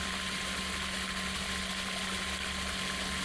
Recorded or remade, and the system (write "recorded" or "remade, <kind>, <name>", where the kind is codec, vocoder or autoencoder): recorded